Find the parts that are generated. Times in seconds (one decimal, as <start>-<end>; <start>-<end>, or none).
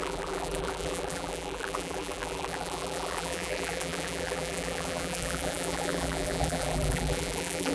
0.0-7.7